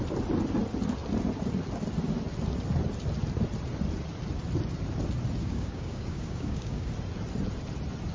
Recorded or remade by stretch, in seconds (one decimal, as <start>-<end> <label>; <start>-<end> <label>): 0.0-5.4 recorded; 5.4-6.9 remade; 6.9-8.1 recorded